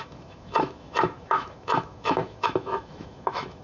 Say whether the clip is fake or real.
fake